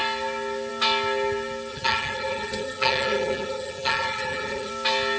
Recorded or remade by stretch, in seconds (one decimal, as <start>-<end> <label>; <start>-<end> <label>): 0.0-1.7 recorded; 1.7-4.7 remade; 4.7-5.2 recorded